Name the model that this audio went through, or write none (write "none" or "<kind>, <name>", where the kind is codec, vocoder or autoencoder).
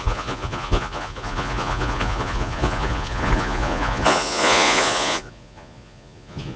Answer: vocoder, Vocos